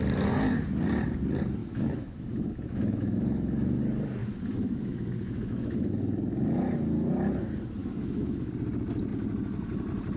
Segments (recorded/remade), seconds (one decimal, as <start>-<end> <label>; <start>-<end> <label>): 0.0-1.6 recorded; 1.6-3.8 remade; 3.8-4.2 recorded; 4.2-5.9 remade; 5.9-7.8 recorded; 7.8-8.5 remade; 8.5-10.2 recorded

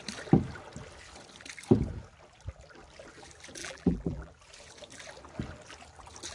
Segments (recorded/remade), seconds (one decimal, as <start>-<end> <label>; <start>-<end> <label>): 0.0-3.6 recorded; 3.6-4.3 remade; 4.3-6.3 recorded

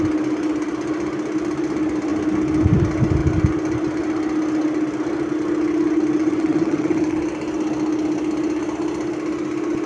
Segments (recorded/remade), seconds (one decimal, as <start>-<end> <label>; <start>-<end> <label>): 0.0-6.2 recorded; 6.2-7.2 remade; 7.2-9.9 recorded

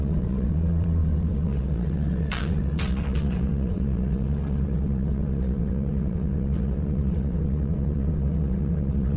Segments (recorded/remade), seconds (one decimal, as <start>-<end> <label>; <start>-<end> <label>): 0.0-9.2 remade

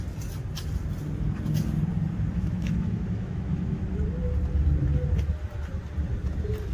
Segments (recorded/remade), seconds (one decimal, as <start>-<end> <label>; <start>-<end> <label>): 0.0-2.3 recorded; 2.3-3.8 remade; 3.8-6.7 recorded

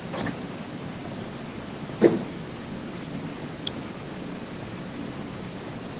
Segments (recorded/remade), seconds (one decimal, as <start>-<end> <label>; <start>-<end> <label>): 0.0-6.0 recorded